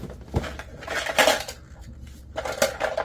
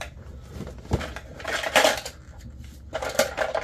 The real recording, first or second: first